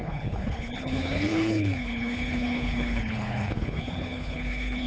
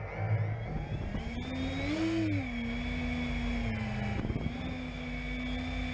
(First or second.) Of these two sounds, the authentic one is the second